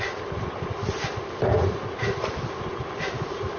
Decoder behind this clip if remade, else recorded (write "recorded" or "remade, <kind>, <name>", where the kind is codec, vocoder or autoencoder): recorded